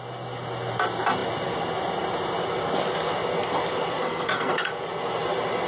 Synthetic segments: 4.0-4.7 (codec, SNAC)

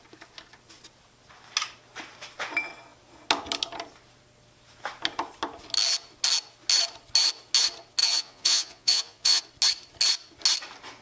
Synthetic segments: 8.0-9.4 (vocoder, Vocos)

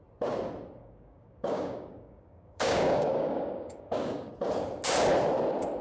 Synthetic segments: 0.8-4.3 (codec, DAC)

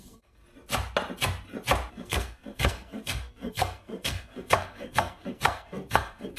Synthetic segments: 0.0-0.4 (codec, SNAC); 1.9-6.4

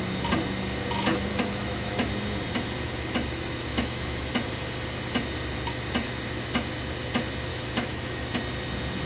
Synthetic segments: 1.3-2.1 (autoencoder, DAC-VAE); 3.7-4.3; 7.5-8.3